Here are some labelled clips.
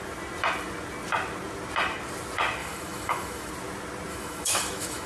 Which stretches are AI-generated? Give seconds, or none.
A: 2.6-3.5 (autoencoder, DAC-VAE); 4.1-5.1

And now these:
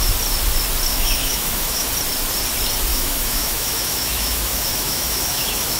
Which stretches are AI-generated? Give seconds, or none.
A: 0.9-1.9 (autoencoder, DAC-VAE); 2.9-5.8